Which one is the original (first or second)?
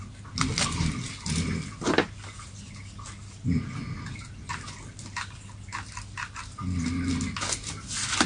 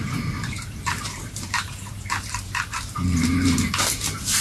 first